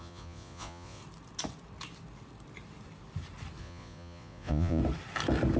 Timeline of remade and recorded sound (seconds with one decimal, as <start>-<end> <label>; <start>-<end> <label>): 0.0-1.0 remade; 1.0-3.6 recorded; 3.6-4.8 remade; 4.8-5.6 recorded